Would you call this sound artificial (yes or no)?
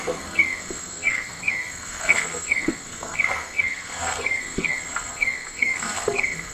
yes